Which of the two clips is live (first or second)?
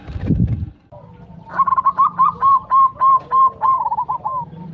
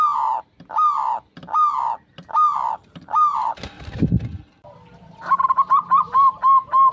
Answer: second